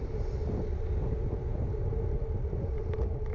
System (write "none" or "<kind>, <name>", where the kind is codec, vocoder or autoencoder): none